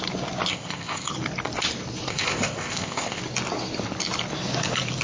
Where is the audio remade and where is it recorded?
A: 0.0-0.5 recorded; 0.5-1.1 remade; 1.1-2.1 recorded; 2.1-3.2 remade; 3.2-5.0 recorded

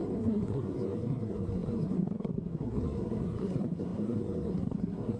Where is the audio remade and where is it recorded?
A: 0.0-5.2 remade

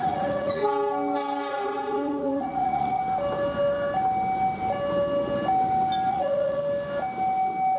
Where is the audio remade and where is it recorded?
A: 0.0-0.6 remade; 0.6-1.5 recorded; 1.5-3.0 remade; 3.0-6.1 recorded; 6.1-6.6 remade; 6.6-7.8 recorded

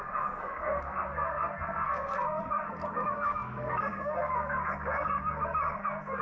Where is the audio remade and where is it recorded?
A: 0.0-6.2 remade

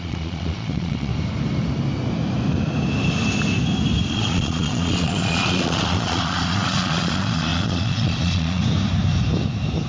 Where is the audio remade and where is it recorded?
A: 0.0-1.1 remade; 1.1-4.1 recorded; 4.1-8.6 remade; 8.6-9.9 recorded

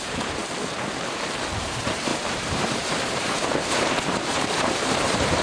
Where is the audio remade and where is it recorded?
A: 0.0-0.4 remade; 0.4-1.6 recorded; 1.6-5.4 remade